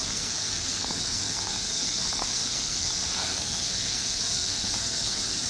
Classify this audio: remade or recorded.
remade